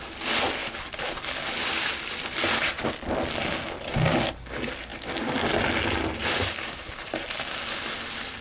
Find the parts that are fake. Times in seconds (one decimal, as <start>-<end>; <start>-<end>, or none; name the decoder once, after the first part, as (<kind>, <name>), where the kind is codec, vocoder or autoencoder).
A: none